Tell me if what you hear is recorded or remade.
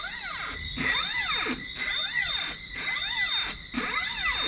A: recorded